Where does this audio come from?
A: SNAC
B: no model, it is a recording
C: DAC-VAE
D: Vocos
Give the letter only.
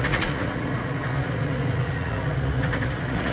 D